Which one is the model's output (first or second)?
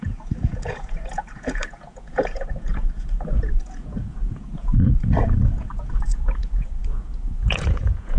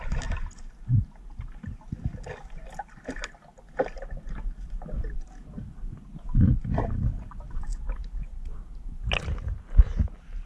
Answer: first